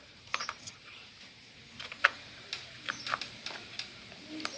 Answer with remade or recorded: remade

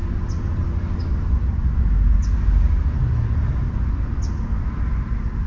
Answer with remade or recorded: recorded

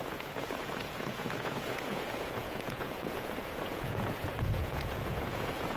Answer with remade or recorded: remade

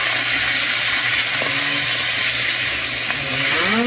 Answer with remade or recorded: recorded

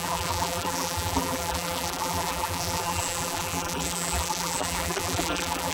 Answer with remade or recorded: remade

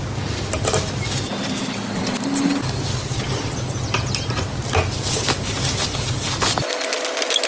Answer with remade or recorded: recorded